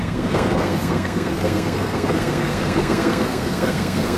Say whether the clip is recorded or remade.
remade